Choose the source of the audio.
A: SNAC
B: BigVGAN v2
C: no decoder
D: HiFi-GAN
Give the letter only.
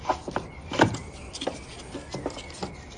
C